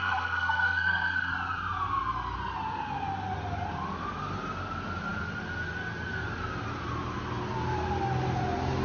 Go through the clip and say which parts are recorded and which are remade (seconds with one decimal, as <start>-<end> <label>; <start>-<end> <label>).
0.0-1.3 remade; 1.3-8.8 recorded